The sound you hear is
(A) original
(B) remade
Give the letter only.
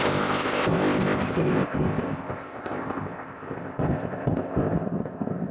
B